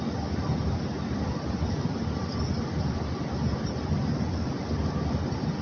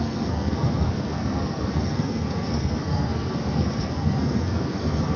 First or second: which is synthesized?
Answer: second